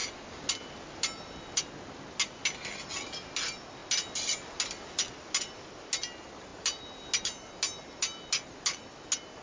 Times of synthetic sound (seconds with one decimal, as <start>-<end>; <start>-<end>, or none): none